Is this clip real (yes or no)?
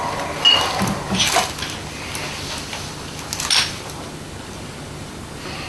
yes